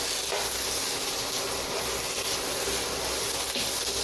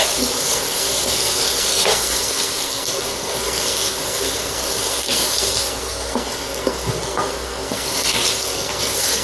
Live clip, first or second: first